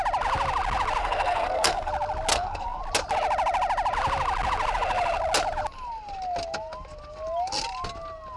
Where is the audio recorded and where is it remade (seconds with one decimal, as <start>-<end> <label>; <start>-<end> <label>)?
0.0-1.0 recorded; 1.0-1.9 remade; 1.9-2.3 recorded; 2.3-2.8 remade; 2.8-8.4 recorded

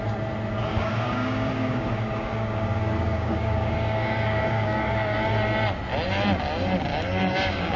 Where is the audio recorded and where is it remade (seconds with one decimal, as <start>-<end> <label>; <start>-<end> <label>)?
0.0-0.7 recorded; 0.7-5.3 remade; 5.3-6.9 recorded; 6.9-7.8 remade

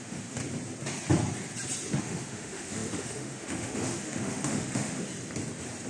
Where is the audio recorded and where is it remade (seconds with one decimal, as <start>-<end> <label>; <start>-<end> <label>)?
0.0-0.4 remade; 0.4-2.0 recorded; 2.0-5.1 remade; 5.1-5.9 recorded

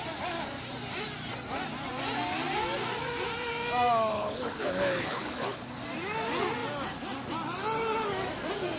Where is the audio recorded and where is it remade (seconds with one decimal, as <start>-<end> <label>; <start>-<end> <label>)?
0.0-4.1 recorded; 4.1-5.7 remade; 5.7-8.8 recorded

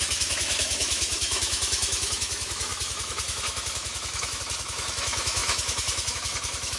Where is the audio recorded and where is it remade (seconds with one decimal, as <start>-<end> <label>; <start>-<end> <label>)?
0.0-6.8 remade

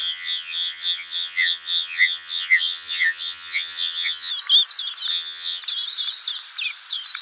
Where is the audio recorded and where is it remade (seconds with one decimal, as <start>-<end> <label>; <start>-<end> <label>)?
0.0-4.3 remade; 4.3-5.1 recorded; 5.1-5.6 remade; 5.6-7.2 recorded